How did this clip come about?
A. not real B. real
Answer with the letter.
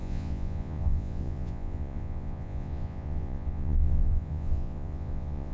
A